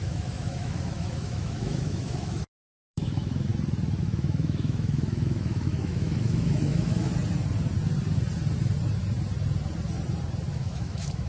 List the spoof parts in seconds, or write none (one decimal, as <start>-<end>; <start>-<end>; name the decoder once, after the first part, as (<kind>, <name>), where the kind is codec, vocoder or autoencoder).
0.0-3.5 (autoencoder, DAC-VAE); 4.0-7.1; 10.5-11.3